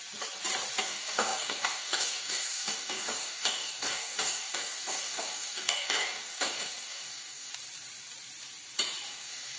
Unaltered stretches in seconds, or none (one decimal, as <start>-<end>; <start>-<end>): 0.0-0.8; 7.5-9.1